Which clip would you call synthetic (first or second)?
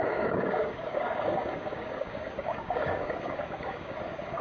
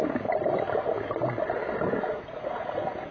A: first